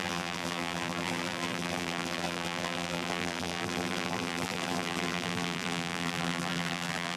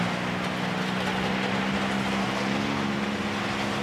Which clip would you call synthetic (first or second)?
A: first